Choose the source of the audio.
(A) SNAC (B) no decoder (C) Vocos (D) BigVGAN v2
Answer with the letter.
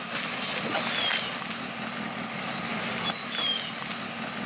B